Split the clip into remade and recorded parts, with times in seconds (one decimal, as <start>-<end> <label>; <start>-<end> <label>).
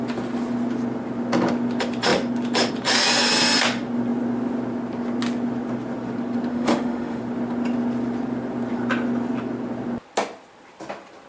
0.0-6.5 recorded; 6.5-7.2 remade; 7.2-11.3 recorded